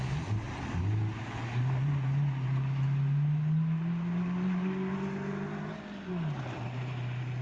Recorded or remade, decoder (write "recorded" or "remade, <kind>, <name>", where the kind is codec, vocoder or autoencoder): recorded